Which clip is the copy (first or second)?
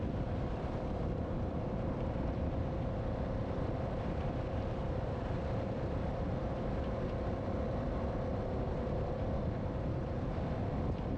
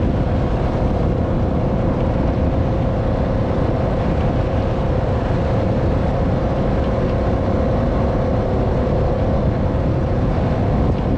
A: first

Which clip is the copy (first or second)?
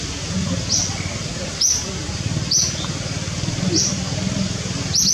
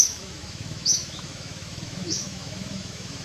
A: second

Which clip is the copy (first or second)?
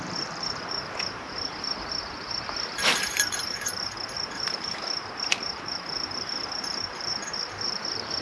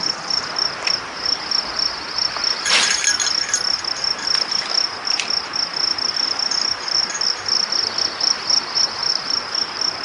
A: first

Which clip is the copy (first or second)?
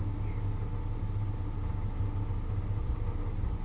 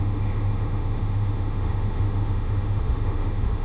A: second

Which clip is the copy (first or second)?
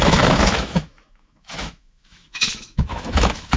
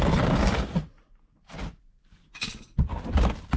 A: first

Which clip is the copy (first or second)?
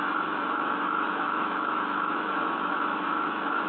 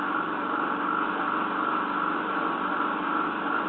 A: first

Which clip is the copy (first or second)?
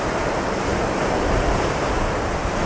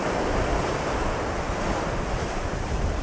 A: second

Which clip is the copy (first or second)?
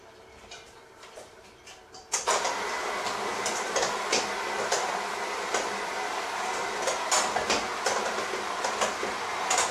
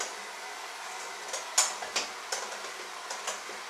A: first